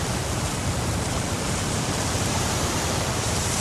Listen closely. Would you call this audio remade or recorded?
remade